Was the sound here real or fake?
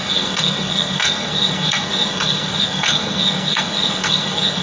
fake